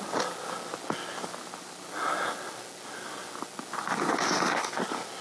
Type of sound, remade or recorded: recorded